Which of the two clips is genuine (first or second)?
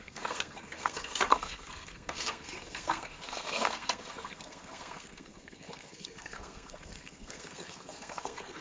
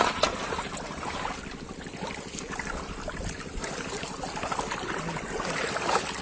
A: second